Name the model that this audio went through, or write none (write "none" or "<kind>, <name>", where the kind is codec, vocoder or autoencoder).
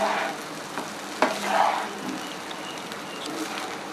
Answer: none